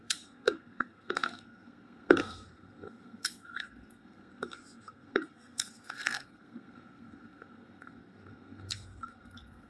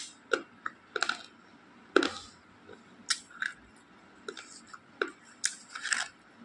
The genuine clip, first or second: second